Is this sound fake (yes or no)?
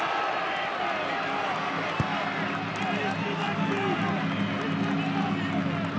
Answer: no